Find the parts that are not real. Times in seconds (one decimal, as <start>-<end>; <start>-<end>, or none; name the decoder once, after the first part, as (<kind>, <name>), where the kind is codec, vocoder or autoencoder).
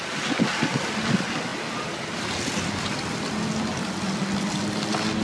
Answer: none